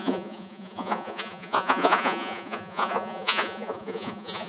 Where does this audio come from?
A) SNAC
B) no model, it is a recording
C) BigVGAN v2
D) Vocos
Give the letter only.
D